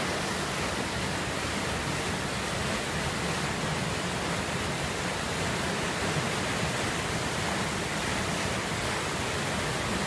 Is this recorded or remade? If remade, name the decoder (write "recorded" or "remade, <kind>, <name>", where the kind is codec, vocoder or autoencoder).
recorded